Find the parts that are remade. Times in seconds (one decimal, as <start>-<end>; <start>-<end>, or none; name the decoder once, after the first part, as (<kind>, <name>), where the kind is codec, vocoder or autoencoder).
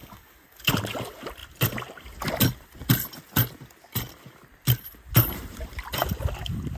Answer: 0.0-0.7 (codec, DAC)